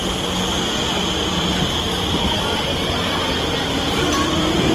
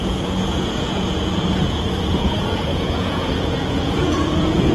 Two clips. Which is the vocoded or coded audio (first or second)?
second